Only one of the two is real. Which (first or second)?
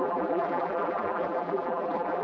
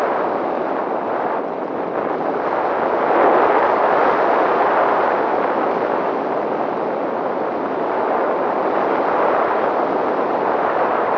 second